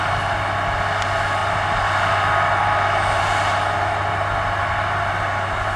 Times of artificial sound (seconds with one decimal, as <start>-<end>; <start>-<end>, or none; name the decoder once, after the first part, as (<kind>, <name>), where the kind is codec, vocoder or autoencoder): none